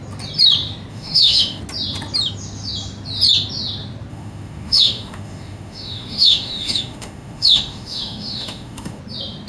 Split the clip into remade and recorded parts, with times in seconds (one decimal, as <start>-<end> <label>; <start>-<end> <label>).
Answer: 0.0-0.9 recorded; 0.9-1.6 remade; 1.6-4.1 recorded; 4.1-9.0 remade; 9.0-9.5 recorded